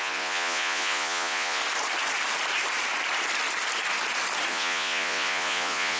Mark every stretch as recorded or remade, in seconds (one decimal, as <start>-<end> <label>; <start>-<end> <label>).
0.0-1.6 remade; 1.6-4.5 recorded; 4.5-6.0 remade